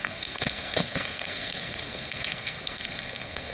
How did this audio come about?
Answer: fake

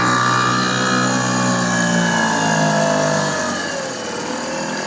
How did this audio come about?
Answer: real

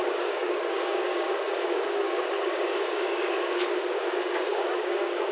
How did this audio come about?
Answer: fake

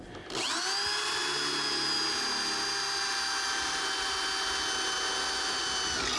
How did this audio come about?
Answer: real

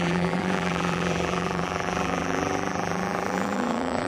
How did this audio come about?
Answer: fake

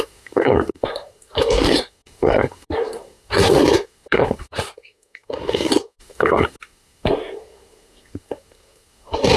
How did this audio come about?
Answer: fake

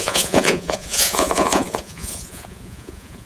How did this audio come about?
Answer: fake